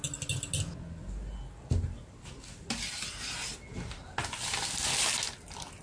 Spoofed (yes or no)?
no